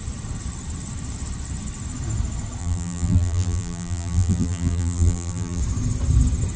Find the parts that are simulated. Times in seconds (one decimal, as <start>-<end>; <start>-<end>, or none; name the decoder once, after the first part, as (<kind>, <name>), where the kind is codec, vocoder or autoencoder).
2.6-5.6 (vocoder, BigVGAN v2)